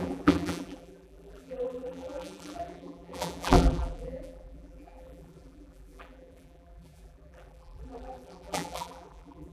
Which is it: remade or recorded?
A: remade